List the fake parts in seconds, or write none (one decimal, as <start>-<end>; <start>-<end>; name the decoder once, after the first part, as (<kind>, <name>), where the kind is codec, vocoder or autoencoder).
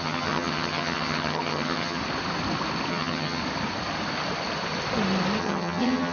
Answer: 0.0-2.0 (vocoder, HiFi-GAN); 2.9-3.4; 5.4-6.1